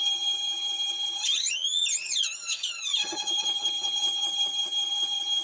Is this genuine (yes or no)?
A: no